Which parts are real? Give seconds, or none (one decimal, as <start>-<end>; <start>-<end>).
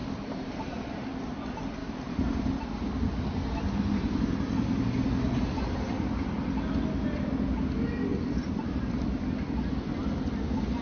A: 1.2-1.8; 3.1-8.1; 9.2-10.8